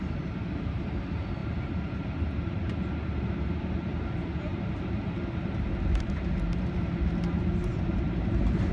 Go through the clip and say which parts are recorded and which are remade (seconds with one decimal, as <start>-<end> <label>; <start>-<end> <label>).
0.0-8.7 remade